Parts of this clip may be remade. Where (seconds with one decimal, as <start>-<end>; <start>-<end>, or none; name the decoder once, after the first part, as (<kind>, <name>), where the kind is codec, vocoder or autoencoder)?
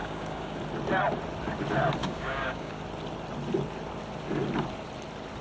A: 0.0-0.6 (codec, DAC); 2.0-2.8